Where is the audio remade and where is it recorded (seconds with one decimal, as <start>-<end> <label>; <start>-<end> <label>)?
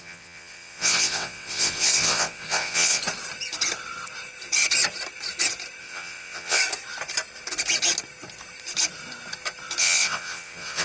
0.0-3.0 remade; 3.0-5.8 recorded; 5.8-6.6 remade; 6.6-9.8 recorded; 9.8-10.8 remade